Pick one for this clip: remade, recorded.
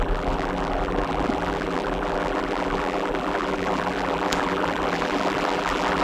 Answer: remade